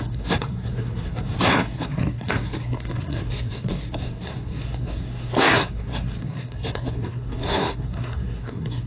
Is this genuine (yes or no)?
no